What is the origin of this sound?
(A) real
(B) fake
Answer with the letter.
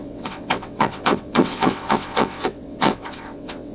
B